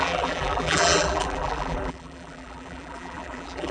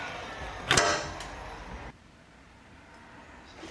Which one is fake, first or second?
first